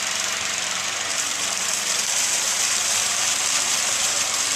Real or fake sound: fake